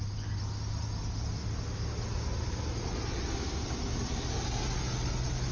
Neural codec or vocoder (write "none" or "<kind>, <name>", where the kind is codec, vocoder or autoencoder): none